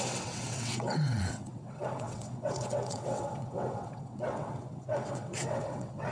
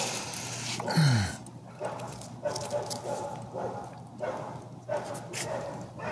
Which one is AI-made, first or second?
first